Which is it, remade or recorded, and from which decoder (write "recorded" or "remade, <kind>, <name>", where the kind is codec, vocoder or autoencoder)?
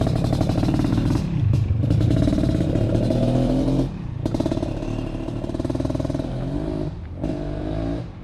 remade, vocoder, BigVGAN v2